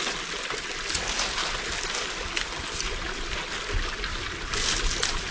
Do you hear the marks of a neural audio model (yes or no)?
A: no